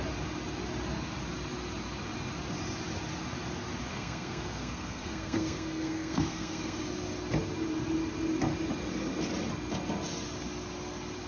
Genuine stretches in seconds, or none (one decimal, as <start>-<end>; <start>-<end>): 0.0-3.9; 6.8-11.3